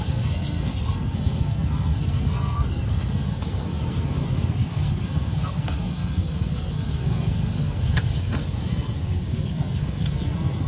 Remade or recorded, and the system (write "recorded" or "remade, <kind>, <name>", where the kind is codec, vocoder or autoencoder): remade, codec, SNAC